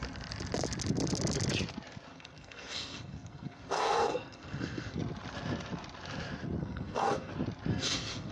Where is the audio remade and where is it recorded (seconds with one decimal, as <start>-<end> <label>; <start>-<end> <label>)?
0.0-2.1 recorded; 2.1-5.0 remade; 5.0-6.6 recorded; 6.6-7.3 remade; 7.3-7.7 recorded; 7.7-8.3 remade